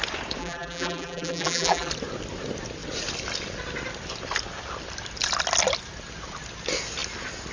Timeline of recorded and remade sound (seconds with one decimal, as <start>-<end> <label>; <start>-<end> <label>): 0.0-0.4 recorded; 0.4-1.9 remade; 1.9-7.5 recorded